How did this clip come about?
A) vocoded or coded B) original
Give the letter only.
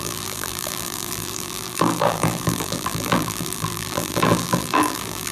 A